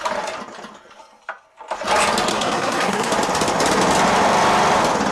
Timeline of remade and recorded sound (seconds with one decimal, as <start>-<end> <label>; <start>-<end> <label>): 0.0-2.3 recorded; 2.3-3.1 remade; 3.1-5.1 recorded